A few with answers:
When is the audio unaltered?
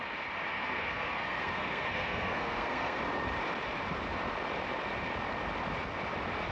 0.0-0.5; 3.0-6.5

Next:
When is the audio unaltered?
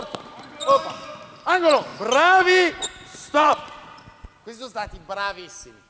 0.0-3.1; 4.0-5.9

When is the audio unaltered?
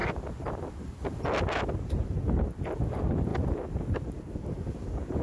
0.0-5.2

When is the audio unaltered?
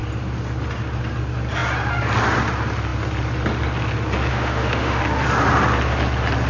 0.0-4.3; 5.0-6.5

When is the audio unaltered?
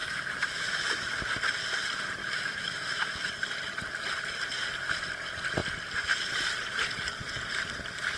1.2-2.2; 3.3-8.2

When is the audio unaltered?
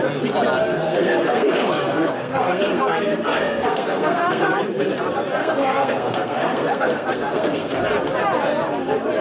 0.0-0.7; 4.5-5.4; 7.8-9.2